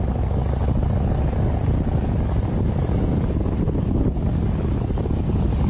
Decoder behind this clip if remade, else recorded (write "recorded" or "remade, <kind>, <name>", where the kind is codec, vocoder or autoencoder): remade, codec, DAC